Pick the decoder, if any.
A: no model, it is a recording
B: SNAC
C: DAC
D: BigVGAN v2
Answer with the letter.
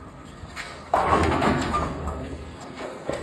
B